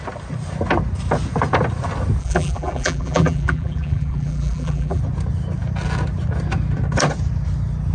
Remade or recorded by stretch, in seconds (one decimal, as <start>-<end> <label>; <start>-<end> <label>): 0.0-2.2 recorded; 2.2-5.0 remade; 5.0-7.9 recorded